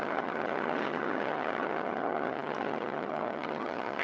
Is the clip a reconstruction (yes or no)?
yes